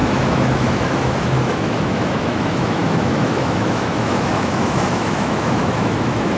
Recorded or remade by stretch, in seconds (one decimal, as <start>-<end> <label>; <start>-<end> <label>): 0.0-6.4 remade